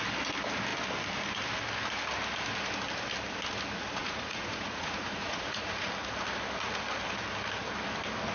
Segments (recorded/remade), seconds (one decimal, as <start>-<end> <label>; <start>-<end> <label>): 0.0-4.0 recorded; 4.0-5.9 remade; 5.9-8.3 recorded